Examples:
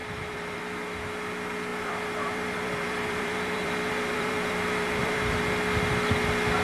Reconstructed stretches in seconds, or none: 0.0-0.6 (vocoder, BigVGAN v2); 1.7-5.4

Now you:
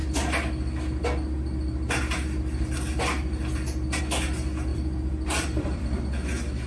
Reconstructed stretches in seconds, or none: 4.7-6.0 (vocoder, BigVGAN v2)

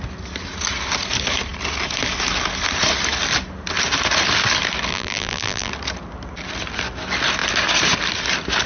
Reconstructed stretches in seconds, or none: 4.9-5.7 (vocoder, BigVGAN v2)

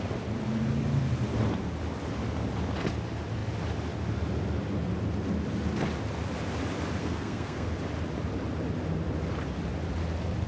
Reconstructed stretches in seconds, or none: 7.0-7.8 (codec, SNAC)

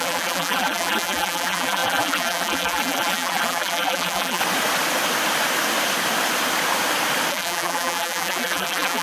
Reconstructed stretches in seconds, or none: 0.0-4.4 (vocoder, BigVGAN v2); 7.3-9.0

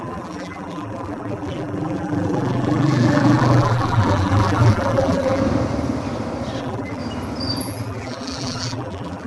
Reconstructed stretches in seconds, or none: 0.0-5.4 (vocoder, BigVGAN v2); 6.6-7.0; 7.6-9.3

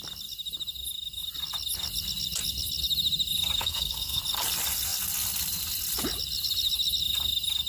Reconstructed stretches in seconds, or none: 3.6-4.2 (codec, SNAC)